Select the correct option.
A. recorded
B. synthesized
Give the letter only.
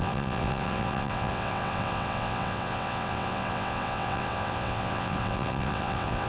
B